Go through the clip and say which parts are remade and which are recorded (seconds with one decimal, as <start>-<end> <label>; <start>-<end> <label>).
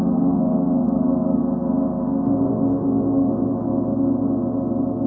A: 0.0-1.4 remade; 1.4-2.5 recorded; 2.5-3.7 remade; 3.7-5.1 recorded